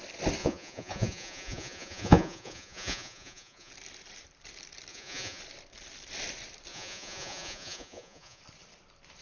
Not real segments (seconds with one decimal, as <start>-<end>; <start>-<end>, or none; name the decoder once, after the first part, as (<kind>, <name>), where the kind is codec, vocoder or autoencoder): 0.4-3.7 (vocoder, Vocos); 4.9-5.4; 6.7-8.4